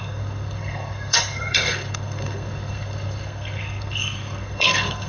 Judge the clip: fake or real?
fake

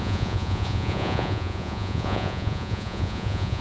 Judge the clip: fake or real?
fake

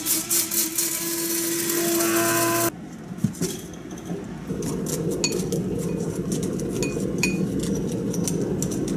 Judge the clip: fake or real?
real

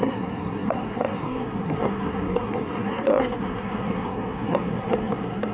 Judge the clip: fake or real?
fake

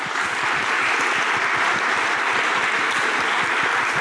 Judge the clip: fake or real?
real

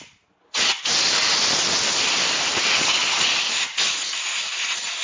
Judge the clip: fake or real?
real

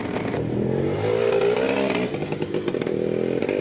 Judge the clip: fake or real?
real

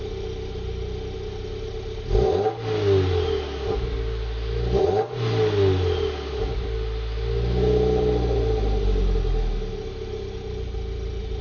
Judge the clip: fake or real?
real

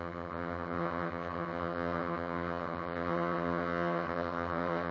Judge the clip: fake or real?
fake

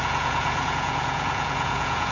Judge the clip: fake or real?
fake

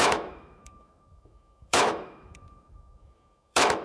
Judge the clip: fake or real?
fake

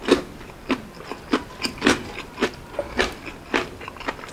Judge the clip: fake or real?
real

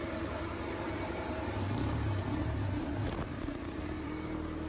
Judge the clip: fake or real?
fake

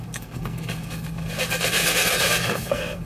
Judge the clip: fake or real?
fake